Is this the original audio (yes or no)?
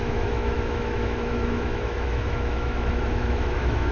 no